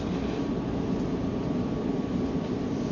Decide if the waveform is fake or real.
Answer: real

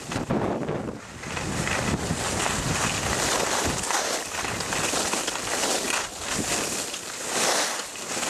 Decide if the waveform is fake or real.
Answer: real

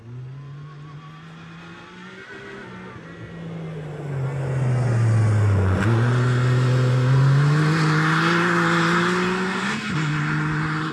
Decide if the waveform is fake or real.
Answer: real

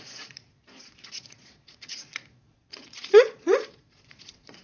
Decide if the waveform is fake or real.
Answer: fake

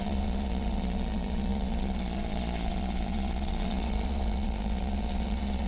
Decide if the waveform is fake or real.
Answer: fake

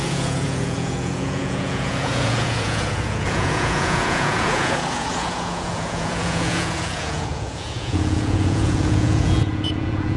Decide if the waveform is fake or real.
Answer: fake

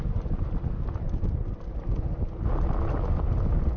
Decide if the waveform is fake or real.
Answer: real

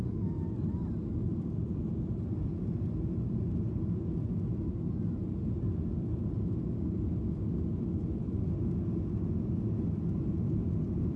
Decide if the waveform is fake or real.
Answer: real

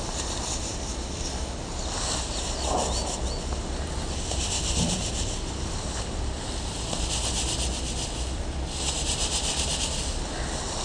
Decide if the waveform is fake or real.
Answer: real